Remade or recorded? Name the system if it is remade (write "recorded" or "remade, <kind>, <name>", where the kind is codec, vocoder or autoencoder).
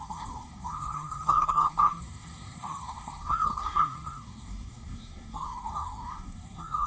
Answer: remade, codec, SNAC